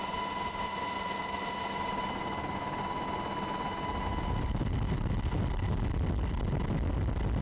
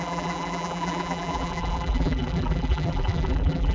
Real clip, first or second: first